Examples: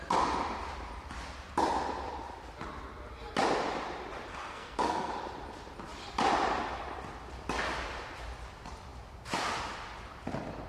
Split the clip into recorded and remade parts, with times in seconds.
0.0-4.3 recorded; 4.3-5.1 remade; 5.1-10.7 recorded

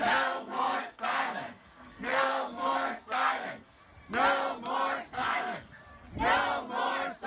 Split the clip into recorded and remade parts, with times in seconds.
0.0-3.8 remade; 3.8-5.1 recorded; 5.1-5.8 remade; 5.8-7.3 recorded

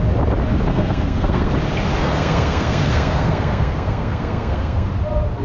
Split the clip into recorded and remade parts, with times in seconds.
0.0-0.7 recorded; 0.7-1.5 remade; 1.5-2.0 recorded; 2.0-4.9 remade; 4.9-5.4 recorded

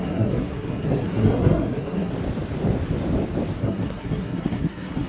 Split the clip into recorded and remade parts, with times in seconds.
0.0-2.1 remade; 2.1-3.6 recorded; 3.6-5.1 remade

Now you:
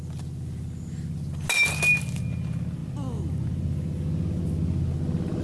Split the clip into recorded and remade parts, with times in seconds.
0.0-5.4 recorded

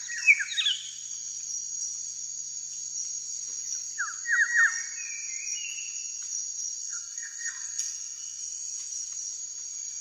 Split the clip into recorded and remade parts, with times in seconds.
0.0-6.8 recorded; 6.8-8.4 remade; 8.4-10.0 recorded